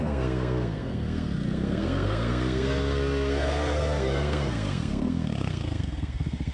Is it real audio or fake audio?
fake